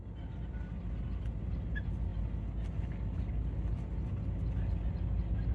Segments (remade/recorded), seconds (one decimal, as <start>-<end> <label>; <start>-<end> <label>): 0.0-5.5 recorded